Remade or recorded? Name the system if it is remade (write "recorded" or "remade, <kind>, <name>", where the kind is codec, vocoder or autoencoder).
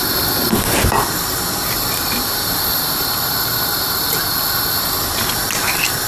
recorded